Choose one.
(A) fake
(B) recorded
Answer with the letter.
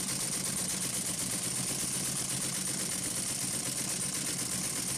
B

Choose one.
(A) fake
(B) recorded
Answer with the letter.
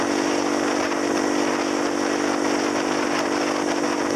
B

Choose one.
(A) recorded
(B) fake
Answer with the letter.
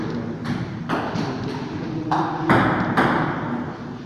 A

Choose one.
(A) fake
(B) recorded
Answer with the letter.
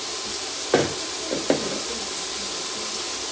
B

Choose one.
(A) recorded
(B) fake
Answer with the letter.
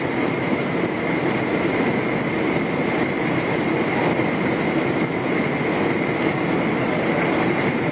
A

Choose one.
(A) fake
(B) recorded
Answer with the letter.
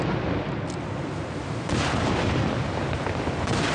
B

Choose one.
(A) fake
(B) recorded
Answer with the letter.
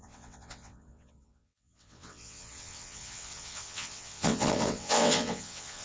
A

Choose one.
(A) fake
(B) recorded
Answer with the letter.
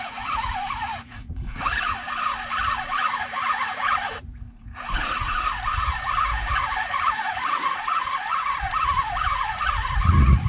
A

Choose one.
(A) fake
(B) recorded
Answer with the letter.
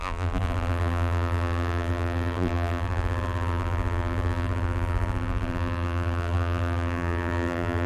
A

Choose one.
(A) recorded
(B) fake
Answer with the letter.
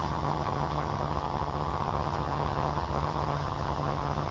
B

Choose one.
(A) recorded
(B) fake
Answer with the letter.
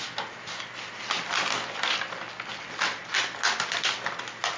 A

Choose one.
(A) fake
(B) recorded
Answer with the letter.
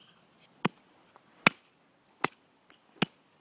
B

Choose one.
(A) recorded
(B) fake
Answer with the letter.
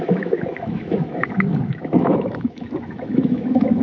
B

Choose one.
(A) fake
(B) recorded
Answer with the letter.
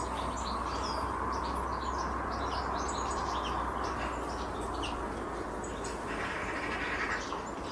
B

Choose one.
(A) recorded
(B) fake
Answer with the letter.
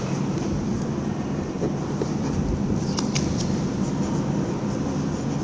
A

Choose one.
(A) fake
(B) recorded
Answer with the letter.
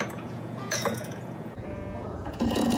A